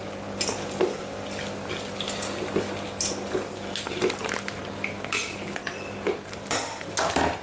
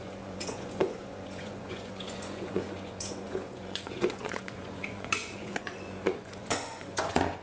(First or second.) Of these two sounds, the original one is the first